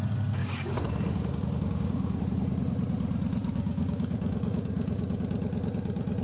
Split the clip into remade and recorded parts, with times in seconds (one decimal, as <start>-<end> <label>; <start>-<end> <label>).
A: 0.0-0.4 recorded; 0.4-2.2 remade; 2.2-3.4 recorded; 3.4-5.2 remade; 5.2-6.2 recorded